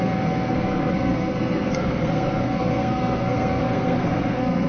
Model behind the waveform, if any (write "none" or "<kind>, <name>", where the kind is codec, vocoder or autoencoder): codec, SNAC